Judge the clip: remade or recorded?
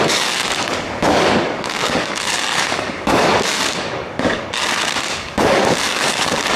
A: remade